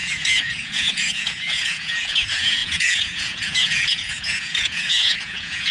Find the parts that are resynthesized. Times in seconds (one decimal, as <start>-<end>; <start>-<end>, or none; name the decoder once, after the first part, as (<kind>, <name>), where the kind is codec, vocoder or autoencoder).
0.0-5.7 (vocoder, Vocos)